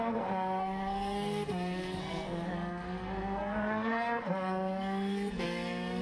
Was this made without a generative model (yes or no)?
no